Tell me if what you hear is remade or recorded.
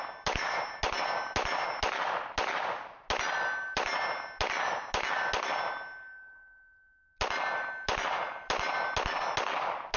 recorded